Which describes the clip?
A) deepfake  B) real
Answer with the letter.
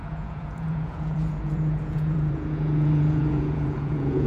A